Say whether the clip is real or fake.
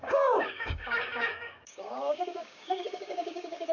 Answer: fake